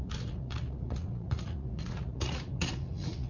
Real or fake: fake